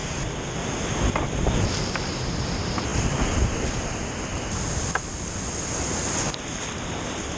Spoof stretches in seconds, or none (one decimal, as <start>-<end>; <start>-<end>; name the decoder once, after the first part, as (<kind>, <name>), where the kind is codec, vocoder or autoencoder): none